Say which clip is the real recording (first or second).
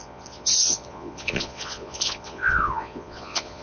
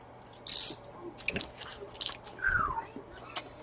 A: second